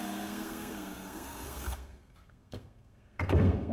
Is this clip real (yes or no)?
no